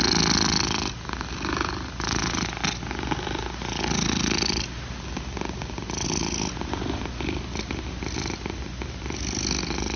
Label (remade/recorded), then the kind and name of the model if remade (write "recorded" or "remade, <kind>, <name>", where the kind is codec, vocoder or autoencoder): recorded